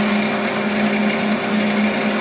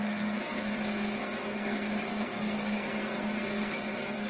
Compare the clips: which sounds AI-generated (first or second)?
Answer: second